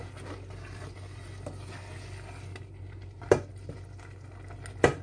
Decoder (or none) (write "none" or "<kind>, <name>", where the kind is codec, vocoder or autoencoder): none